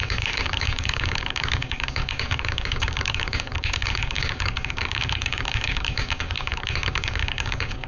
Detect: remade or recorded remade